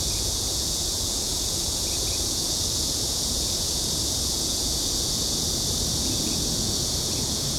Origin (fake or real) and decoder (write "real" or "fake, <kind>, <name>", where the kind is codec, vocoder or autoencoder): fake, vocoder, Vocos